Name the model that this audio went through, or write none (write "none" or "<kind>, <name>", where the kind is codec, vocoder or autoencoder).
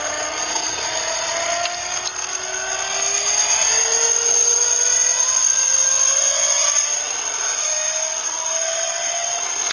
none